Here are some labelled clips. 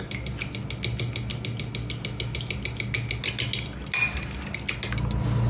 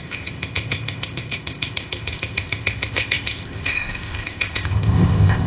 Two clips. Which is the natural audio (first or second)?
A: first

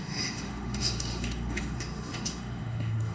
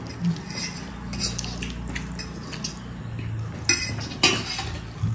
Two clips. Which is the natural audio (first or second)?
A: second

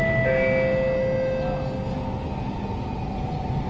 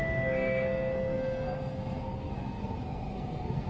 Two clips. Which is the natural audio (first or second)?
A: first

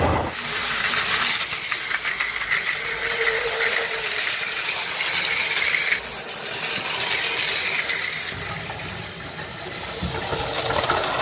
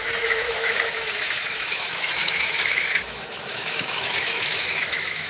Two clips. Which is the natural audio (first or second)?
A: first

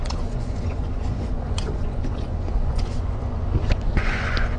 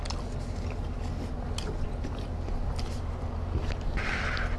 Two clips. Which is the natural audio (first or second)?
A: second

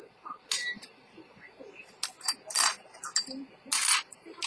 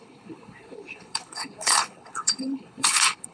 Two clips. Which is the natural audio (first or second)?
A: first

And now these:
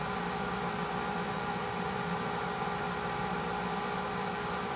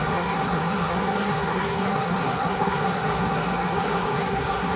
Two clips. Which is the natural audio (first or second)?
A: first